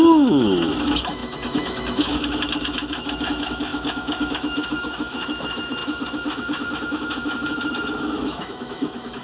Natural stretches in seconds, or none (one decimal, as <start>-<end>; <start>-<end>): none